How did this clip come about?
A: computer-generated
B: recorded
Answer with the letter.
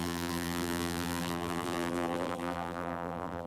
A